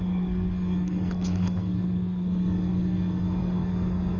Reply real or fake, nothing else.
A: fake